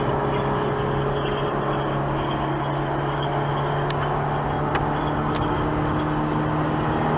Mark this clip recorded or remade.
recorded